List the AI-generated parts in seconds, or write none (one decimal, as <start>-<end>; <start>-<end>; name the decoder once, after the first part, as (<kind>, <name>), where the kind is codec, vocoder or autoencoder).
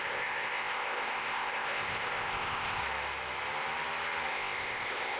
0.0-2.8 (codec, ZipCodec); 4.3-5.2